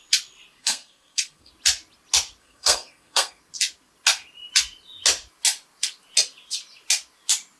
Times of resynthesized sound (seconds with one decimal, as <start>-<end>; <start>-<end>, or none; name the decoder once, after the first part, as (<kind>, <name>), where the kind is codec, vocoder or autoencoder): 0.6-1.5 (codec, SNAC); 2.4-3.4